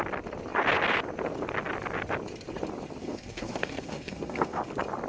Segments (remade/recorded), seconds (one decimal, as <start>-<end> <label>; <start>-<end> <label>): 0.0-3.0 recorded; 3.0-4.6 remade; 4.6-5.1 recorded